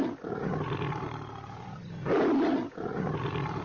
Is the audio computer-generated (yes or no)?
no